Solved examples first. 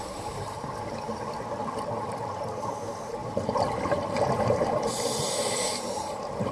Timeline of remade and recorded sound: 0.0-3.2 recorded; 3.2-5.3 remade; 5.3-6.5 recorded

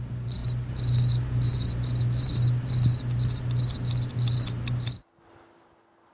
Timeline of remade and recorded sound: 0.0-6.1 recorded

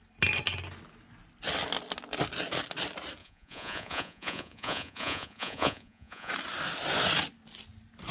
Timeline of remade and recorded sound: 0.0-3.2 recorded; 3.2-6.3 remade; 6.3-8.1 recorded

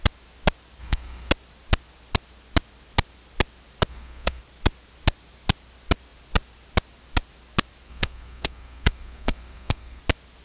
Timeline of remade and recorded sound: 0.0-0.8 recorded; 0.8-1.3 remade; 1.3-3.9 recorded; 3.9-4.4 remade; 4.4-7.9 recorded; 7.9-10.0 remade; 10.0-10.4 recorded

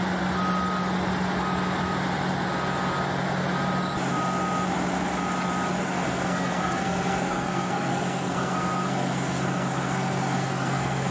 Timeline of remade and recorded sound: 0.0-5.8 recorded; 5.8-11.1 remade

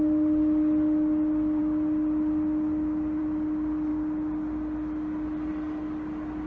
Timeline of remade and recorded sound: 0.0-6.5 recorded

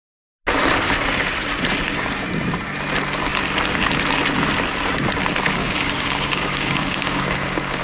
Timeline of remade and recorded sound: 0.0-5.6 recorded; 5.6-7.8 remade